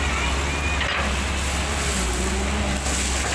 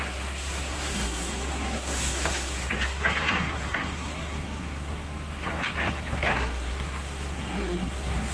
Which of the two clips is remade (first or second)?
second